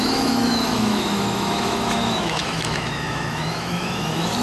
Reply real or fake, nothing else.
fake